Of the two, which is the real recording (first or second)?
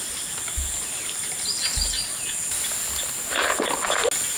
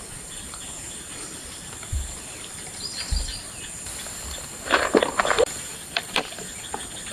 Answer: first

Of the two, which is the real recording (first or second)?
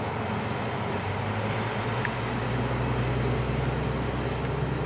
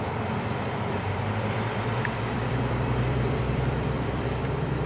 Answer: first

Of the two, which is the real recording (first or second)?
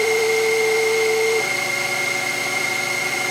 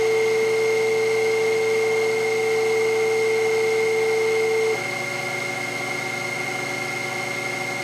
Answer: second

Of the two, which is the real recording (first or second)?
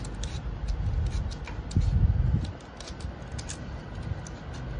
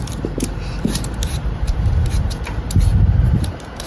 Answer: first